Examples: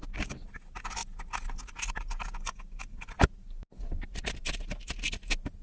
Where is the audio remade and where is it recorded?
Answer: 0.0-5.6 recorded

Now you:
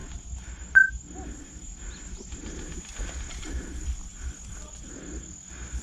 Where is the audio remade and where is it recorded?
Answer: 0.0-5.8 recorded

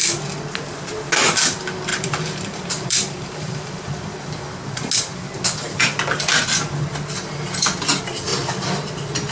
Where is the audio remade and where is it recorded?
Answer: 0.0-1.9 recorded; 1.9-3.8 remade; 3.8-9.3 recorded

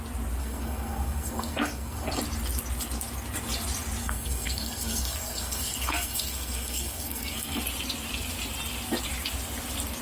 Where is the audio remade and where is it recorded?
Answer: 0.0-0.4 recorded; 0.4-2.2 remade; 2.2-4.0 recorded; 4.0-7.6 remade; 7.6-10.0 recorded

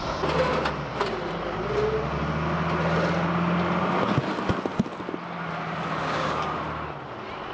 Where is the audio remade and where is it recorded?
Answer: 0.0-6.0 recorded; 6.0-6.6 remade; 6.6-7.5 recorded

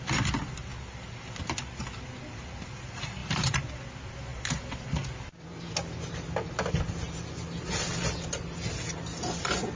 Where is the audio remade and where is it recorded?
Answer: 0.0-0.7 recorded; 0.7-2.5 remade; 2.5-9.8 recorded

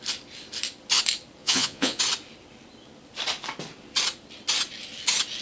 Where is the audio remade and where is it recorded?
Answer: 0.0-1.4 recorded; 1.4-2.0 remade; 2.0-5.4 recorded

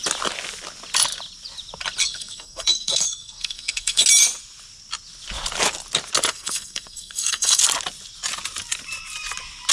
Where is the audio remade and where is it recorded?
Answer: 0.0-2.0 recorded; 2.0-4.0 remade; 4.0-6.3 recorded; 6.3-7.6 remade; 7.6-9.7 recorded